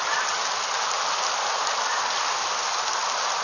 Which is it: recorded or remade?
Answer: recorded